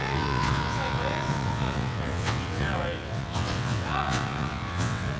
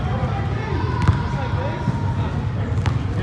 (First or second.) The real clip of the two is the second